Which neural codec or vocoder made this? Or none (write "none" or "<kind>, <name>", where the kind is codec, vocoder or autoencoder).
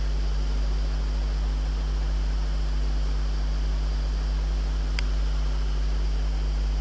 none